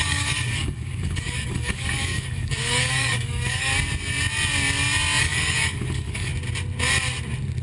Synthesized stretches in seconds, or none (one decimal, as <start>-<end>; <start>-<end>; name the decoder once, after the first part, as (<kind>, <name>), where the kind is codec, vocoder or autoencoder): 0.0-3.7 (codec, DAC); 5.2-6.3